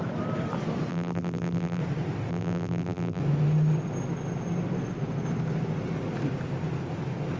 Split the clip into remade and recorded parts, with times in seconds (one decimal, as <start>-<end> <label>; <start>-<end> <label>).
0.0-0.9 recorded; 0.9-1.8 remade; 1.8-2.3 recorded; 2.3-3.2 remade; 3.2-7.4 recorded